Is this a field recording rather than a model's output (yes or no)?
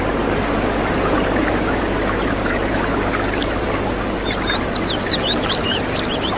no